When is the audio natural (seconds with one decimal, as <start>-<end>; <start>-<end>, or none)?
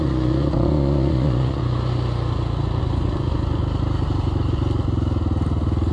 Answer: 1.6-2.8; 3.6-5.9